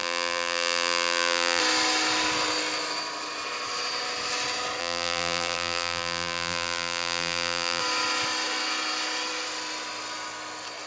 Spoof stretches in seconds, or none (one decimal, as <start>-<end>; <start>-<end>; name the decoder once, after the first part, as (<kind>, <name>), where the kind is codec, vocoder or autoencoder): 0.0-1.6 (vocoder, BigVGAN v2); 4.8-7.8